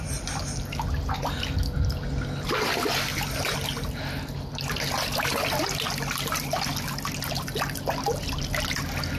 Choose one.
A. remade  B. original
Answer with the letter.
B